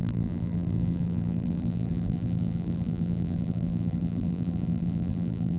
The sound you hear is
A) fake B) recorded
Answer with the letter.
A